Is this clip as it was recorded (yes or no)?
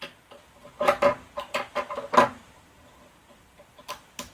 yes